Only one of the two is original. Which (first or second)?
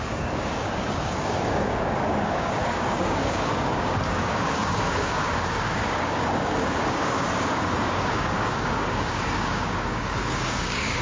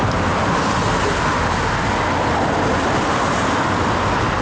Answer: second